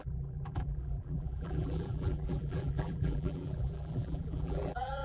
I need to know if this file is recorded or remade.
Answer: remade